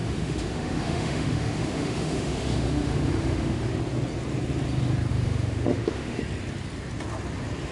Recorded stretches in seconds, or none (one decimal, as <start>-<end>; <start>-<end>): 3.8-5.1; 6.2-7.7